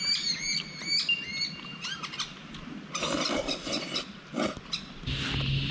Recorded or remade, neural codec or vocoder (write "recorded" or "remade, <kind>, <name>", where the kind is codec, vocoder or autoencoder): recorded